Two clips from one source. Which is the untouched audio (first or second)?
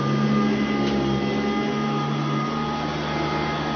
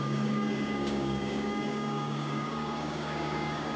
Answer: first